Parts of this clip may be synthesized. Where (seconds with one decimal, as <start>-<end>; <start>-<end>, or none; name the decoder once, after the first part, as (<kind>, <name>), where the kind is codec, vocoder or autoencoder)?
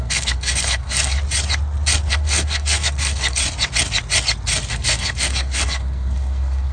0.0-1.2 (codec, SNAC); 2.1-3.4; 4.7-6.7